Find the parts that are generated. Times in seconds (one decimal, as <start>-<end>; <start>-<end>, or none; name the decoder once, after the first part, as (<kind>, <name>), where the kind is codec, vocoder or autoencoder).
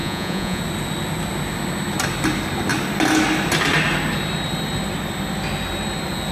0.0-0.6 (vocoder, Vocos)